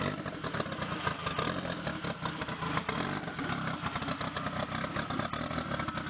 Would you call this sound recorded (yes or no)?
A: yes